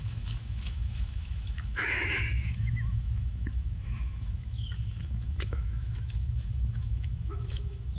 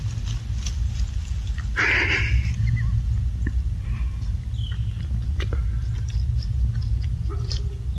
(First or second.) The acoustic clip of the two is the second